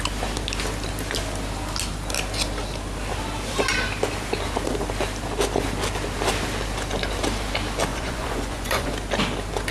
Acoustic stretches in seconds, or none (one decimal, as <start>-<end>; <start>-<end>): 0.0-7.9; 8.9-9.7

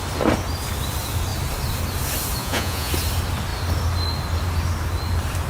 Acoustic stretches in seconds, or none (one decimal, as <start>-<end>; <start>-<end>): 0.0-2.4; 2.9-5.5

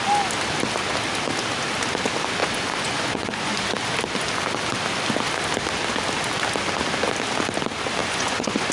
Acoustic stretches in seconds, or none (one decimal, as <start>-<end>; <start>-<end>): 0.0-2.4; 3.6-8.0

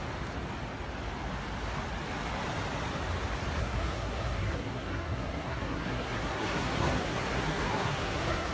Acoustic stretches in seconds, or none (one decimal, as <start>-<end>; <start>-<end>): 0.0-3.6

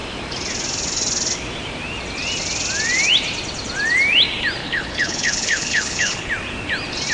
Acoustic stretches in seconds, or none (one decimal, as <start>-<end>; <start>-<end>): 0.0-4.6; 6.3-7.1

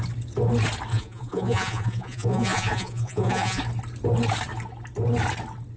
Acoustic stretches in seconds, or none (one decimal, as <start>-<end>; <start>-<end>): 0.0-0.9; 3.6-5.8

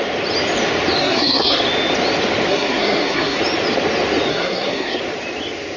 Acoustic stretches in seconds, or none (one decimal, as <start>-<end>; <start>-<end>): 0.0-1.0; 1.6-2.5; 3.4-4.3; 5.0-5.8

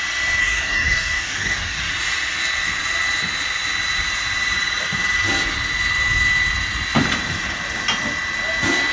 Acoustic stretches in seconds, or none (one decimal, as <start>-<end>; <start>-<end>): 0.0-0.4; 1.9-8.9